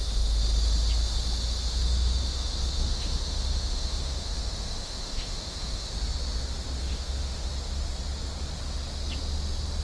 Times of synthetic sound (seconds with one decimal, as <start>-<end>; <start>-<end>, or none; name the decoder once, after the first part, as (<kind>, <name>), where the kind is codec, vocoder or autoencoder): 1.7-5.9 (autoencoder, DAC-VAE); 6.8-7.5